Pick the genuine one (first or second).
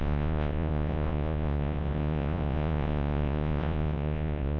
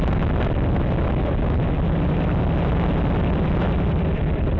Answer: second